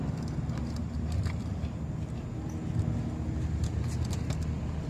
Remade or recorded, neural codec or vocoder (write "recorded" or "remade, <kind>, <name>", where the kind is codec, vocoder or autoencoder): recorded